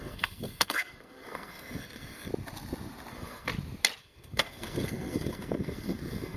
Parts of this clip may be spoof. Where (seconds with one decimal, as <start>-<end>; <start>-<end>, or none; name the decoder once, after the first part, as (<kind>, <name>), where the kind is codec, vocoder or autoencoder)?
0.0-2.3 (codec, SNAC); 3.1-3.5; 4.0-6.4